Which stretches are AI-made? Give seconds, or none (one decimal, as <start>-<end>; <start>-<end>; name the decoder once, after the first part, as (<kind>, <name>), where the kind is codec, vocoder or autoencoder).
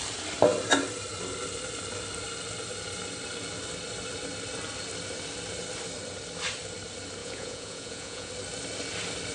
7.2-8.3 (vocoder, Vocos)